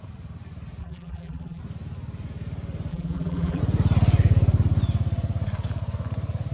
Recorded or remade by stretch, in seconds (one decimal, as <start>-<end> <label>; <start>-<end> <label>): 0.0-0.8 recorded; 0.8-1.6 remade; 1.6-2.9 recorded; 2.9-3.6 remade; 3.6-6.5 recorded